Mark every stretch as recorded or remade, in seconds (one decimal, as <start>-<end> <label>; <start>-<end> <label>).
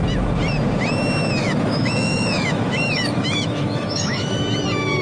0.0-1.4 recorded; 1.4-4.4 remade; 4.4-5.0 recorded